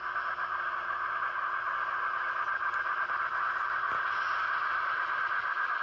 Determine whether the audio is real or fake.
real